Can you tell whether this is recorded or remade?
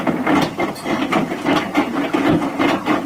recorded